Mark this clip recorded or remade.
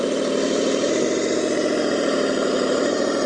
recorded